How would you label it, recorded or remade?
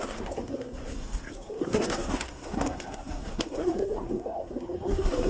remade